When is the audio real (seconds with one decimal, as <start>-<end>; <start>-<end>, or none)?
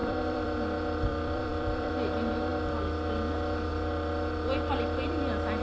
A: 0.6-1.1; 1.9-5.6